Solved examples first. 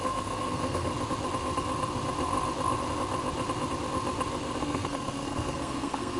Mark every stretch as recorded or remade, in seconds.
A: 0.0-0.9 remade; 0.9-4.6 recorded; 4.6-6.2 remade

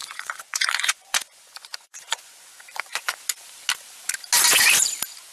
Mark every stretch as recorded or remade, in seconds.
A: 0.0-3.2 remade; 3.2-5.3 recorded

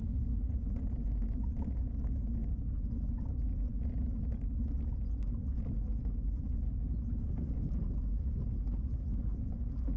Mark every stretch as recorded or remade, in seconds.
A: 0.0-10.0 recorded

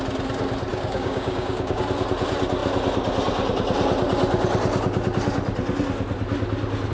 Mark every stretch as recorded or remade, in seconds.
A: 0.0-0.7 recorded; 0.7-1.8 remade; 1.8-6.9 recorded